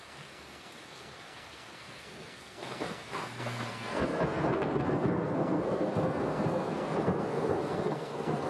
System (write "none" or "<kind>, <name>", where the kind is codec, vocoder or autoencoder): codec, SNAC